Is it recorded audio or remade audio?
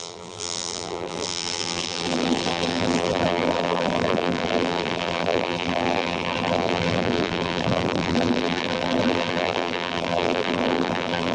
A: remade